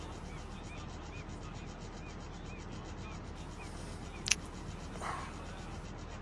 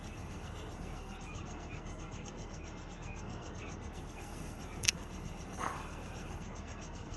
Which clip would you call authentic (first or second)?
first